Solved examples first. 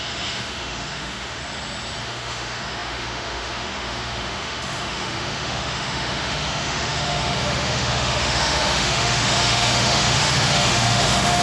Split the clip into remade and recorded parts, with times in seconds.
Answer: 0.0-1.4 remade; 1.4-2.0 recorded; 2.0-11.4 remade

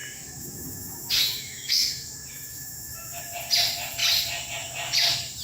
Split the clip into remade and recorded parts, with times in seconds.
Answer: 0.0-3.2 remade; 3.2-5.4 recorded

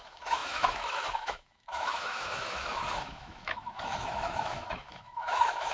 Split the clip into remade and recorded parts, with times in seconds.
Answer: 0.0-5.7 remade